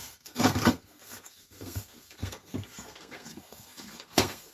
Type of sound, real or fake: fake